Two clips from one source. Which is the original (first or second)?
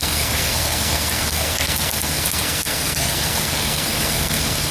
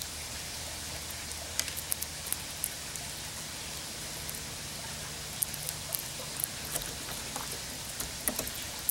second